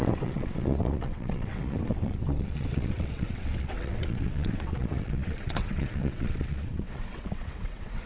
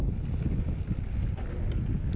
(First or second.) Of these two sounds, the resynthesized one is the first